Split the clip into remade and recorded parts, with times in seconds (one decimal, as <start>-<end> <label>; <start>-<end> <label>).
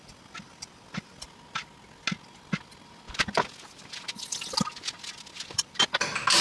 0.0-6.4 recorded